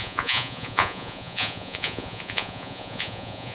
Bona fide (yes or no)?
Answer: no